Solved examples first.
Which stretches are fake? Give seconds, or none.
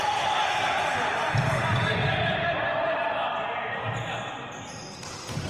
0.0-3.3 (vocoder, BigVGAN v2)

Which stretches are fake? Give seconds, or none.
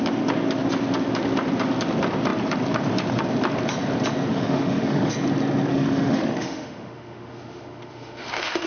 4.3-5.1 (autoencoder, DAC-VAE); 5.7-8.7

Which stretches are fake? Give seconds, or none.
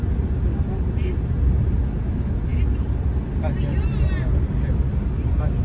none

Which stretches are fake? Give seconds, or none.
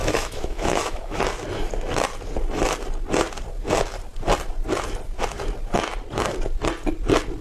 0.0-1.2 (autoencoder, DAC-VAE)